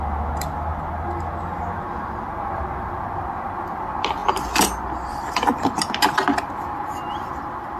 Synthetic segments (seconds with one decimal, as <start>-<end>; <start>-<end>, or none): none